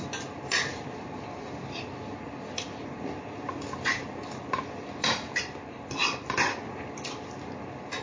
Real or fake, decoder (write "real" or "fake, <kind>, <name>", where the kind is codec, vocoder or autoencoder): fake, vocoder, BigVGAN v2